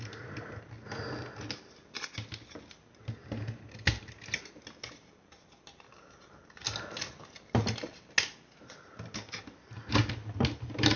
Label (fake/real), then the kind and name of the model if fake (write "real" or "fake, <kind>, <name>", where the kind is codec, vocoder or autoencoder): real